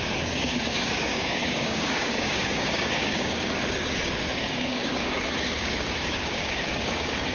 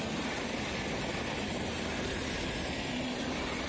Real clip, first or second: second